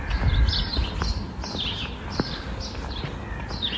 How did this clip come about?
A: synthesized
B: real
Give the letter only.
B